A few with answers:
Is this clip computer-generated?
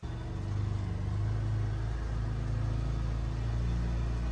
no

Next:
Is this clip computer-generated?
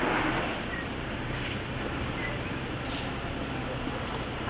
no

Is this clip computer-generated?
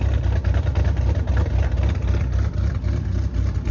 no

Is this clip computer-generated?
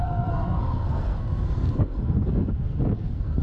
yes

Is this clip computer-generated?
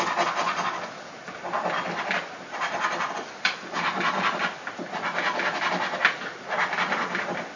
no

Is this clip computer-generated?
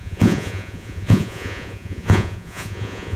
yes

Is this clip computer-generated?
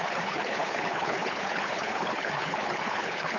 yes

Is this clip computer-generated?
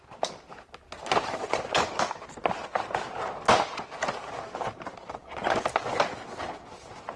no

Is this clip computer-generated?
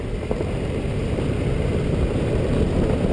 no